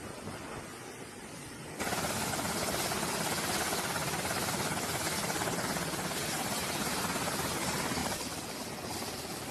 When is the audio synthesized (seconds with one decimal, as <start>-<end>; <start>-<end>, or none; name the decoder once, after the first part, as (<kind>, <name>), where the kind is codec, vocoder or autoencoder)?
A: 8.0-9.5 (vocoder, BigVGAN v2)